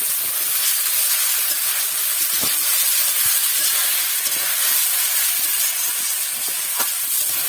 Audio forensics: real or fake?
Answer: real